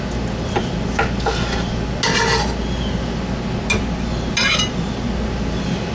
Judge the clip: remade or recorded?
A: recorded